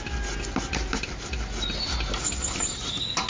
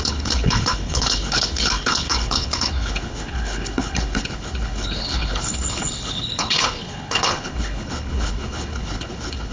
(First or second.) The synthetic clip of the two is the second